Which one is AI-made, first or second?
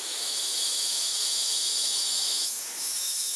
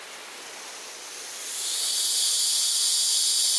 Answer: first